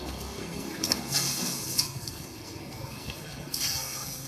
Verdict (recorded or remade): remade